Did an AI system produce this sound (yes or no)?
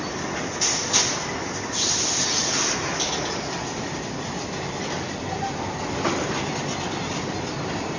no